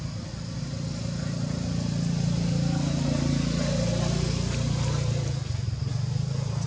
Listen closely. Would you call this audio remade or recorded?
recorded